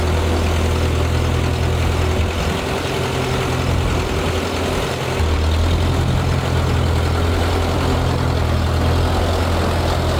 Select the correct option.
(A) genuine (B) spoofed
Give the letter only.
A